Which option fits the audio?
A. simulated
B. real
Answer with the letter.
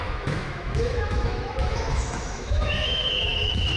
A